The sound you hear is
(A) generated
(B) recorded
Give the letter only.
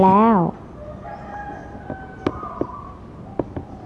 B